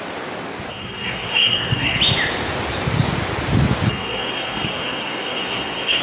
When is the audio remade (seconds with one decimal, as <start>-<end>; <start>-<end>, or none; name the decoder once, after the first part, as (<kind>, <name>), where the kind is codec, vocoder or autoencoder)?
0.7-2.0 (codec, SNAC); 3.9-6.0